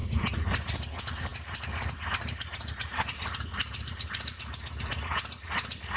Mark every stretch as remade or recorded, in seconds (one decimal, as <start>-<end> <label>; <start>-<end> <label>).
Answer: 0.0-6.0 recorded